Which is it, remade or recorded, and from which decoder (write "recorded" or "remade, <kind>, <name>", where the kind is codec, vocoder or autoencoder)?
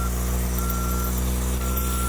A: recorded